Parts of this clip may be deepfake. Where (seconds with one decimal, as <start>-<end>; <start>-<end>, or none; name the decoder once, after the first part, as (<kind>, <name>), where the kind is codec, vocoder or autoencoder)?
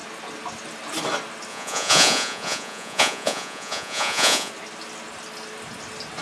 1.5-4.5 (vocoder, Vocos)